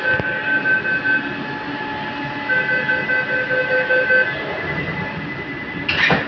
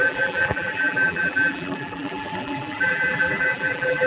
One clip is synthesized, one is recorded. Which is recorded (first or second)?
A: first